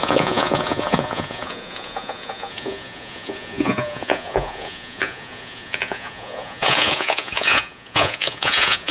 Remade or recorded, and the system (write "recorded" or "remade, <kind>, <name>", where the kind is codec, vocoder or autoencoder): remade, vocoder, Vocos